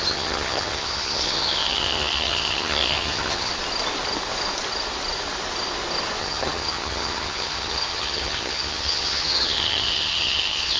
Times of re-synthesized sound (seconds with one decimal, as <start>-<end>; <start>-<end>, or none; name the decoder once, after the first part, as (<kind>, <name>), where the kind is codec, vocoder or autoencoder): 0.0-3.5 (vocoder, HiFi-GAN); 6.2-10.8